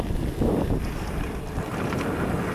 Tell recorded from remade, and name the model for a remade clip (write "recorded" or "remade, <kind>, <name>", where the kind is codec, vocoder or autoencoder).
recorded